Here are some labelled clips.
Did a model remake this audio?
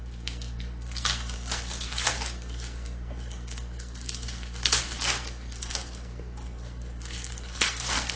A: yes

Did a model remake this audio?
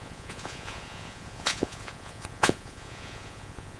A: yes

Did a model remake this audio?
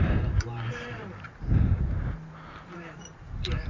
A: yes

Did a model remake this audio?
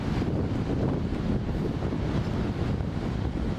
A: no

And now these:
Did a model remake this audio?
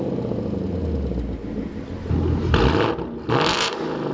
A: no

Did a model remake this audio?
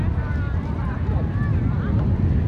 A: no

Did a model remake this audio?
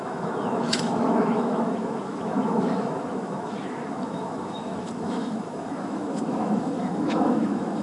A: yes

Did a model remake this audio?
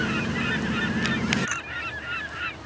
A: no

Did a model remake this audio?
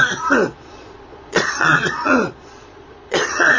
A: yes